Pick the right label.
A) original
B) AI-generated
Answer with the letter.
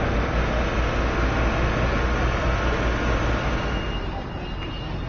A